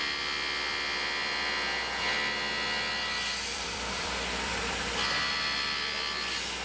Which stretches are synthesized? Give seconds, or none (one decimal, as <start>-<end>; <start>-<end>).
3.5-5.3